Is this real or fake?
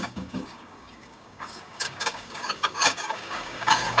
fake